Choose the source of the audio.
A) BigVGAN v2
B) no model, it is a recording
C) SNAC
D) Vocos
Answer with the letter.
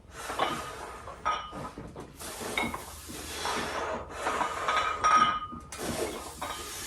B